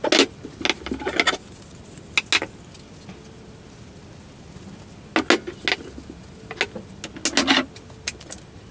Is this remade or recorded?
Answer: recorded